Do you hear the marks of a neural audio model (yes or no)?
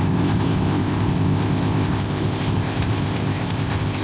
yes